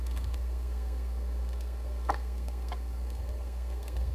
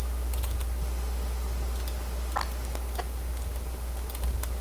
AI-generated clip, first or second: first